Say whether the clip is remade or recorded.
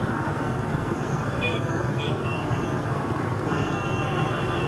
remade